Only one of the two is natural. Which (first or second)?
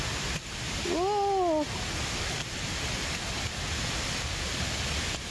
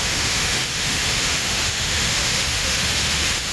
first